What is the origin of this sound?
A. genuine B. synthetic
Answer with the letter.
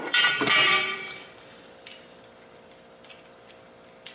B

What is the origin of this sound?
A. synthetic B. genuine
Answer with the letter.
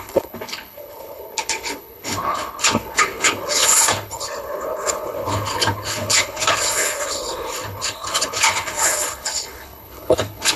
A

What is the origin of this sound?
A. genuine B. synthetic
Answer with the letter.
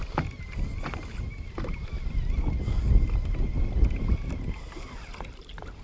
A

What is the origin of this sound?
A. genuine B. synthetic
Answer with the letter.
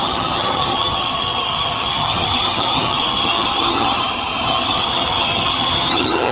B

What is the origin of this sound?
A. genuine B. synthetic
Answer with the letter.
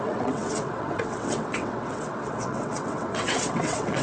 B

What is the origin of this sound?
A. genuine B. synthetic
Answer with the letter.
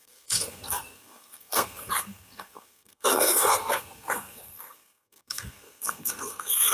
B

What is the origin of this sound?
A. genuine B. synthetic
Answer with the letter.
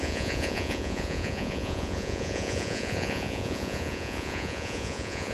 B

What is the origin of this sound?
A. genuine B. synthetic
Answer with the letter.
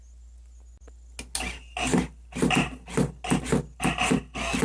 A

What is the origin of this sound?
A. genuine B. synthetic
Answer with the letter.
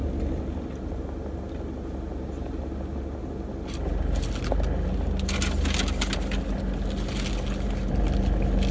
A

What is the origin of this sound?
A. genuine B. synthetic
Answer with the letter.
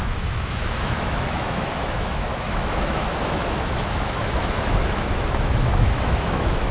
B